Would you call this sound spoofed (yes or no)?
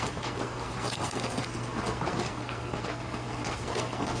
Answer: yes